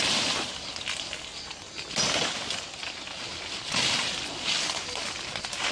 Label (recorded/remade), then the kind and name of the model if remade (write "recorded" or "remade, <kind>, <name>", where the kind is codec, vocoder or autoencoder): recorded